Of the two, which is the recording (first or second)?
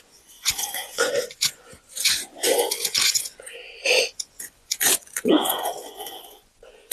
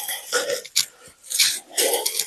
second